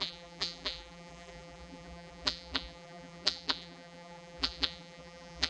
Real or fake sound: fake